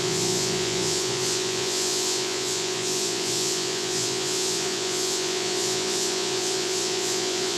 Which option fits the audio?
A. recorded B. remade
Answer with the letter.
B